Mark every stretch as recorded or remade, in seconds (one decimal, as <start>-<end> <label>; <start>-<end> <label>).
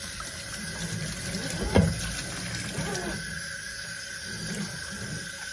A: 0.0-5.5 recorded